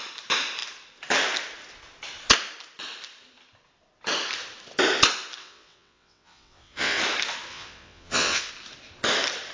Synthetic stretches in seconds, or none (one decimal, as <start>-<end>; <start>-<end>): 5.4-7.0; 7.5-8.5

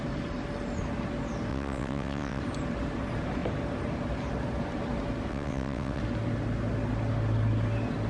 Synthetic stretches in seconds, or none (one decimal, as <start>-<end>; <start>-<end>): 1.5-2.4; 5.3-6.0

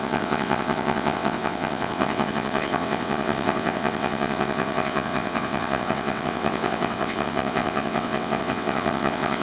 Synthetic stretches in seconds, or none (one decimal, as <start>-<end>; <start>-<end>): 0.0-9.4

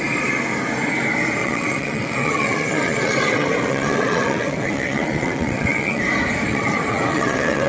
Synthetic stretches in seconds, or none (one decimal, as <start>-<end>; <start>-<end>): 1.4-6.0; 6.5-7.7

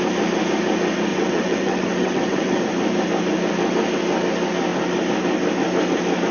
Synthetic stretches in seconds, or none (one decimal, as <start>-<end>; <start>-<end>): 1.1-2.6

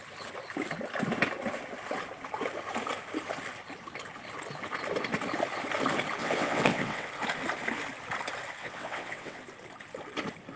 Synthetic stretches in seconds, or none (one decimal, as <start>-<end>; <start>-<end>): 6.2-7.1; 8.6-9.4